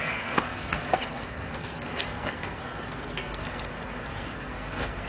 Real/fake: fake